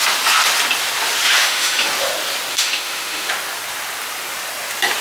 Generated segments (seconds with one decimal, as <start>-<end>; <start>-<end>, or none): 1.4-1.9; 2.5-3.3

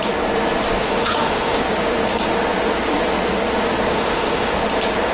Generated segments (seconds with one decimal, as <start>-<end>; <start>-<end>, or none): 0.8-1.6; 3.9-4.5

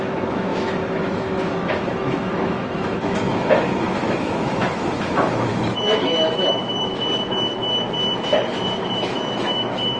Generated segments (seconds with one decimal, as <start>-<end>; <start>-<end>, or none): 0.0-6.9; 8.8-10.0

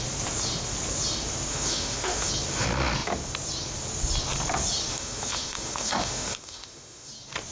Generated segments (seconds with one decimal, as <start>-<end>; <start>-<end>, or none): 1.5-2.3; 4.9-7.1

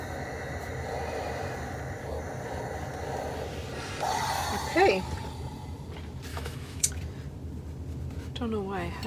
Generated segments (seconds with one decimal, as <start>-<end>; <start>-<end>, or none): 6.3-6.9

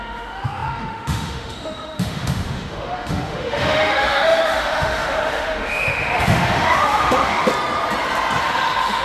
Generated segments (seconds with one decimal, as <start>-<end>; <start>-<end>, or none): 0.0-7.5; 8.4-9.0